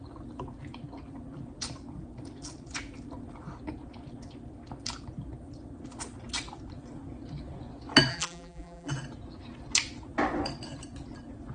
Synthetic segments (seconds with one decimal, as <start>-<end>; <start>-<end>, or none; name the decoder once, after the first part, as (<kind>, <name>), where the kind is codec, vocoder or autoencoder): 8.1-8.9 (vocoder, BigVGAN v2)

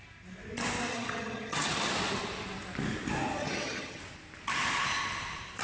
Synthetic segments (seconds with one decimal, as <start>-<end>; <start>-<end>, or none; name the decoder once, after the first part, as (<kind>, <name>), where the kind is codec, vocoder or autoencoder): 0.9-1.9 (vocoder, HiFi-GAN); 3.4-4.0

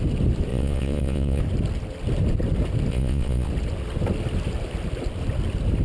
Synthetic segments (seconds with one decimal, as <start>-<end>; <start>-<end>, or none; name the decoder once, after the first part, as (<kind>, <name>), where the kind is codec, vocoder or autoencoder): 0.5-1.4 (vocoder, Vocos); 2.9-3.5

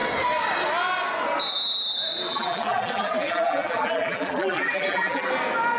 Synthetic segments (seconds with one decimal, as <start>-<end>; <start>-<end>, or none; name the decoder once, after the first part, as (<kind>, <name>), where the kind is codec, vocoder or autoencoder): 2.3-5.3 (vocoder, BigVGAN v2)

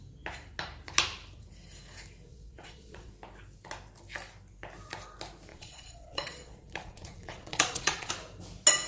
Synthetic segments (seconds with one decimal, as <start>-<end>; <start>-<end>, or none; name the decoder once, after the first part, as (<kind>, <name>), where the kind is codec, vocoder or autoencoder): 2.3-3.1 (vocoder, Vocos); 5.5-8.1